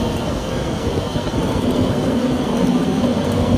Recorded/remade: remade